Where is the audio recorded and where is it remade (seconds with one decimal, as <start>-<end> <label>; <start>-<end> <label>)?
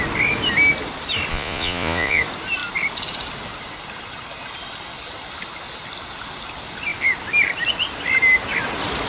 0.0-1.3 recorded; 1.3-2.2 remade; 2.2-9.1 recorded